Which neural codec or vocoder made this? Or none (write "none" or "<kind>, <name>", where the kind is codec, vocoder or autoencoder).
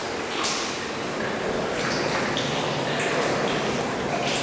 none